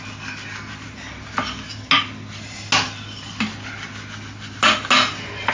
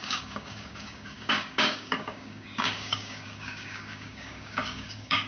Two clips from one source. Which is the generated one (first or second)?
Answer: second